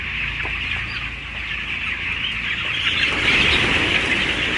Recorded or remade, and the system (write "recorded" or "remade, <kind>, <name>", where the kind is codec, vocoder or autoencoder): recorded